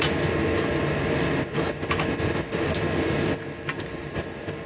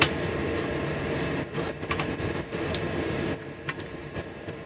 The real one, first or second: first